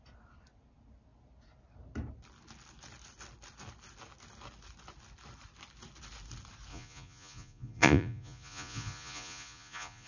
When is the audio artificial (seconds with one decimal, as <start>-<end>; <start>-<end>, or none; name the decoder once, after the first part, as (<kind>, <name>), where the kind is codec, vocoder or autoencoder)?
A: 6.7-10.1 (vocoder, Vocos)